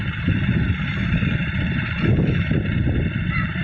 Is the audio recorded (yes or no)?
yes